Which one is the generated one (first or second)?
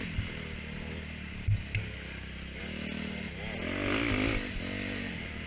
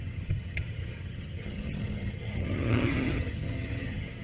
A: second